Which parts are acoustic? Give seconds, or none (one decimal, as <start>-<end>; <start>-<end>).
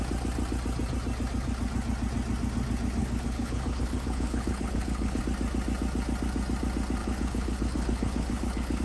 0.0-3.0; 5.2-7.0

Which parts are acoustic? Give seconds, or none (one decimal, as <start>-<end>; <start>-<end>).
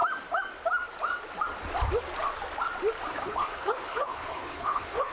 0.0-3.1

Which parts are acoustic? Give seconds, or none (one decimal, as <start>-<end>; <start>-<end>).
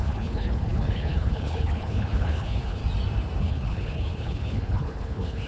2.8-3.4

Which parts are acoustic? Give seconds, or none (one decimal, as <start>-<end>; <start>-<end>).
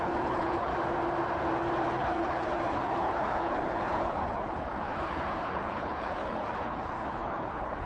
0.7-1.9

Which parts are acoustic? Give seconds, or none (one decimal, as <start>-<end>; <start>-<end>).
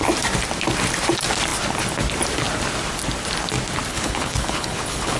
0.0-3.9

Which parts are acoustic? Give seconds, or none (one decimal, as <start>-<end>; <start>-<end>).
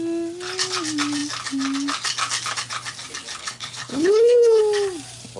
0.0-3.4; 4.6-5.4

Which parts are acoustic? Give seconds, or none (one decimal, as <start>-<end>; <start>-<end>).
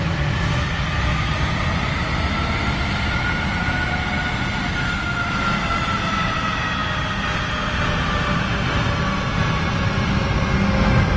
0.0-11.2